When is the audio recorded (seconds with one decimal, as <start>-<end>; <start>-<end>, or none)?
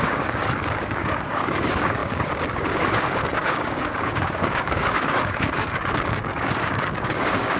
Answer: none